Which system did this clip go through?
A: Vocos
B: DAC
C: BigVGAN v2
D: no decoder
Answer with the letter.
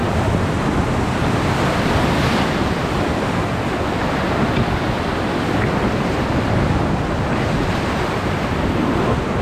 C